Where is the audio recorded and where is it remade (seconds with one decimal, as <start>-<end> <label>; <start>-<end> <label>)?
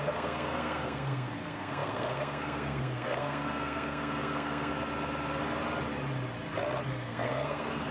0.0-4.7 remade; 4.7-6.9 recorded; 6.9-7.9 remade